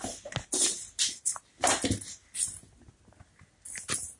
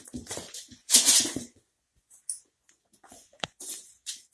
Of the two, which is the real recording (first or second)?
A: first